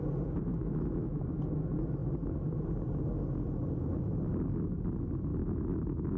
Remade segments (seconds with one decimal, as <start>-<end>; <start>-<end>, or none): 0.5-1.2; 5.3-6.2